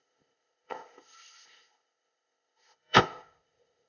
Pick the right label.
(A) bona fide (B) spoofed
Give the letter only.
B